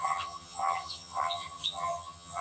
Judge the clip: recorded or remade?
remade